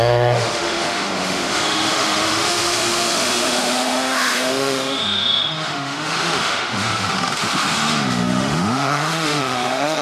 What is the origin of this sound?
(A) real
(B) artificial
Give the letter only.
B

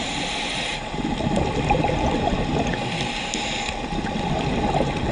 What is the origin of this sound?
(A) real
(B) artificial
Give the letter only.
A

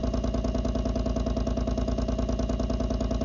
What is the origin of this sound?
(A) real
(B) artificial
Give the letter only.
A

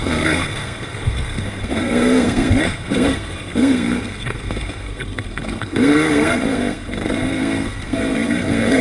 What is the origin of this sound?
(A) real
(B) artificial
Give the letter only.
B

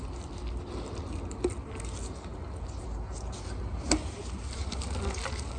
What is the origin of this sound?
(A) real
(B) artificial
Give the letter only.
A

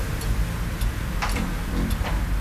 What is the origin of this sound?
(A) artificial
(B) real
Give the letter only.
B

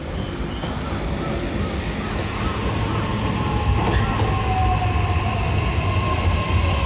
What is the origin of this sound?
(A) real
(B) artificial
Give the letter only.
A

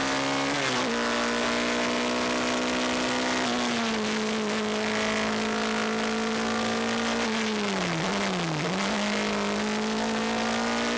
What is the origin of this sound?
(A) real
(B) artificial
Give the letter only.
A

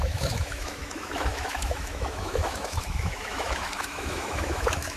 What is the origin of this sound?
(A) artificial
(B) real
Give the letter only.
A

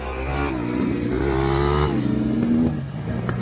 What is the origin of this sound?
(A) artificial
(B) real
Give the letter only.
B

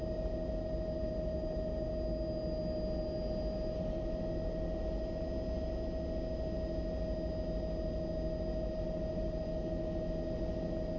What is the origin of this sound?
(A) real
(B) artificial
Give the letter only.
A